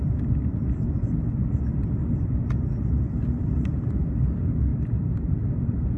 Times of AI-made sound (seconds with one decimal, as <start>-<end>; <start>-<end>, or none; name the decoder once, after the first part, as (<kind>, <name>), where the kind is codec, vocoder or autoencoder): none